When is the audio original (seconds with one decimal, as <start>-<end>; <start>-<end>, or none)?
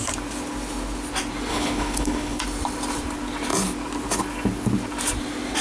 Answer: 0.0-1.5; 2.4-5.6